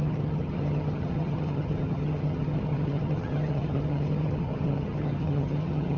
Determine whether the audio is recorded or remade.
remade